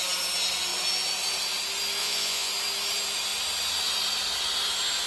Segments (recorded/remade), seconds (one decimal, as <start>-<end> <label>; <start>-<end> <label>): 0.0-2.0 recorded; 2.0-2.5 remade; 2.5-5.1 recorded